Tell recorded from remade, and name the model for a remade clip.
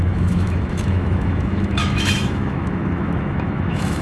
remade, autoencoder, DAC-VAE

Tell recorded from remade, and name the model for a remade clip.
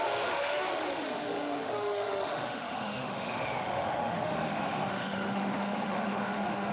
remade, autoencoder, DAC-VAE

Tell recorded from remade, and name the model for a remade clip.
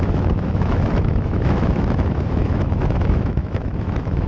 remade, autoencoder, DAC-VAE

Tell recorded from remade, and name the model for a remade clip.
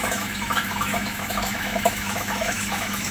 remade, autoencoder, DAC-VAE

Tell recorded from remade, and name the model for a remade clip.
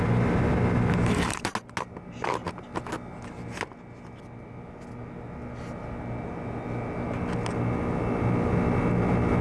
recorded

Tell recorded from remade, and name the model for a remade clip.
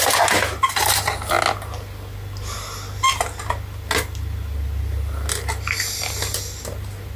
recorded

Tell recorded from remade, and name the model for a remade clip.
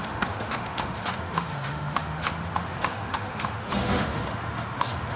remade, autoencoder, DAC-VAE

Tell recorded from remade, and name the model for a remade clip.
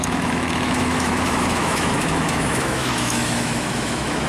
remade, autoencoder, DAC-VAE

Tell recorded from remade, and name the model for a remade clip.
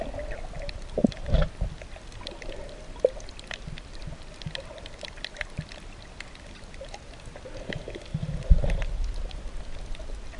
recorded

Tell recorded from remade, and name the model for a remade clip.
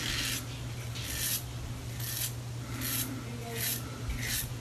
recorded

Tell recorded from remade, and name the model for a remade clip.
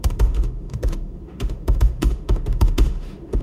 remade, autoencoder, DAC-VAE